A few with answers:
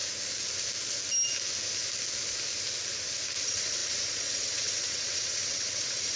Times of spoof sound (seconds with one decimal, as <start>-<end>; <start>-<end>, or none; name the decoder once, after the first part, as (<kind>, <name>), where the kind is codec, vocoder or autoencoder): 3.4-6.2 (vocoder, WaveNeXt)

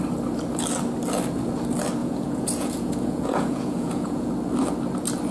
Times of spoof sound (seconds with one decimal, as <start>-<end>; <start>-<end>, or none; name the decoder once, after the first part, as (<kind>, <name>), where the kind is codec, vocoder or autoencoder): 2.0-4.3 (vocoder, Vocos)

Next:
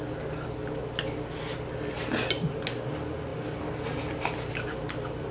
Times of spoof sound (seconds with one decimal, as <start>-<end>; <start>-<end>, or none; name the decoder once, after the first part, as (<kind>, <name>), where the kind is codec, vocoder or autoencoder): none